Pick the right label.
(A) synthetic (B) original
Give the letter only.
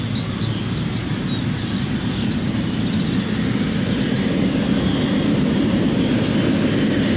B